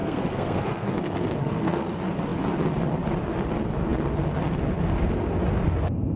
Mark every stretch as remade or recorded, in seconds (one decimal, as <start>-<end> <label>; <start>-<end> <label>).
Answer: 0.0-1.9 remade; 1.9-6.2 recorded